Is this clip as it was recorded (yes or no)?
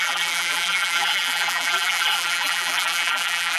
no